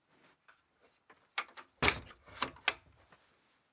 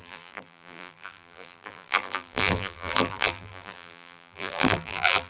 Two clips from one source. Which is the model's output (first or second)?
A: second